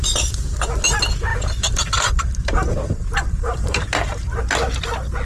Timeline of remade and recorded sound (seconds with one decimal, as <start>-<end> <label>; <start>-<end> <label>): 0.0-1.3 recorded; 1.3-4.4 remade; 4.4-5.2 recorded